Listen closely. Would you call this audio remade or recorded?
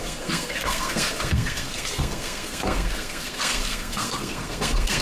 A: remade